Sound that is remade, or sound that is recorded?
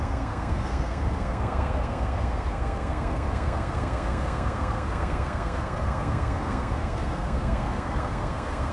remade